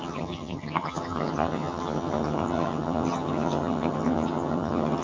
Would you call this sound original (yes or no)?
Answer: no